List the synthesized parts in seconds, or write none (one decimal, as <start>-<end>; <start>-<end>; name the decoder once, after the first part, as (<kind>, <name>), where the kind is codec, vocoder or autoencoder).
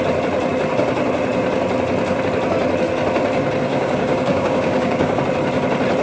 3.7-5.2 (codec, DAC)